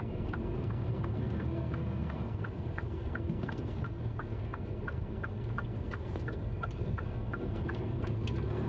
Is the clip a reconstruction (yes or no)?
yes